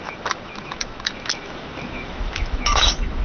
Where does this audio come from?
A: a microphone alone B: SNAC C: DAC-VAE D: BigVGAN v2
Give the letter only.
C